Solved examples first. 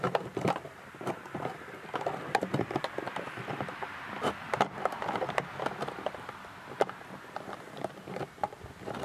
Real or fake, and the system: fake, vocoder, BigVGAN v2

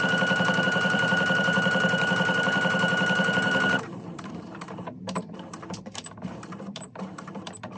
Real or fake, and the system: fake, vocoder, BigVGAN v2